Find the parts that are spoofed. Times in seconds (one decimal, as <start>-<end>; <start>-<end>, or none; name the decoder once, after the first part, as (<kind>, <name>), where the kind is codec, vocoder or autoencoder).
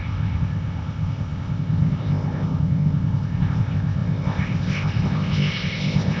0.0-6.2 (codec, ZipCodec)